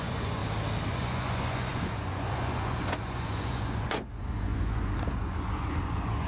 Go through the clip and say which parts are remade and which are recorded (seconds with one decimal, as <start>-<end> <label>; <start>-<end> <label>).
0.0-0.4 remade; 0.4-0.9 recorded; 0.9-6.3 remade